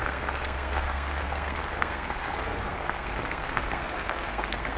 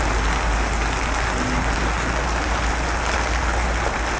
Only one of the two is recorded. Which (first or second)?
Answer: second